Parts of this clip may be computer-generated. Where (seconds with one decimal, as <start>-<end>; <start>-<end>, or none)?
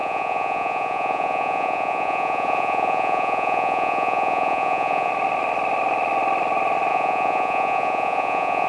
0.0-5.1; 6.9-8.7